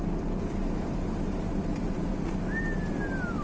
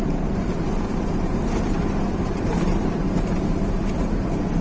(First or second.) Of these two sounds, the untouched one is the first